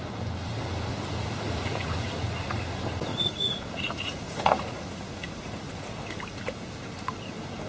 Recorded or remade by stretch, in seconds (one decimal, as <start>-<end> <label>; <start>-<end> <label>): 0.0-0.9 recorded; 0.9-2.1 remade; 2.1-3.1 recorded; 3.1-5.7 remade; 5.7-7.7 recorded